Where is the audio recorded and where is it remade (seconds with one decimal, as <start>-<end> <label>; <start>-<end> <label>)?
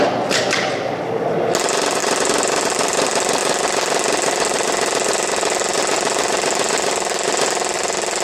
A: 0.0-2.0 recorded; 2.0-3.4 remade; 3.4-8.2 recorded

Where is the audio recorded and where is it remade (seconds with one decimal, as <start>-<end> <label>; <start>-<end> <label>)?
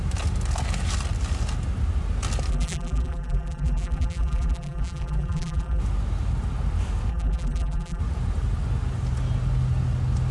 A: 0.0-2.5 recorded; 2.5-5.8 remade; 5.8-7.1 recorded; 7.1-8.0 remade; 8.0-10.3 recorded